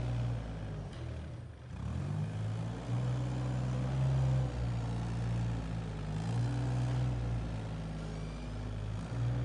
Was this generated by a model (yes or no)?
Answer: no